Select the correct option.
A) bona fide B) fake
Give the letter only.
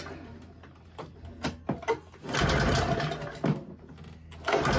A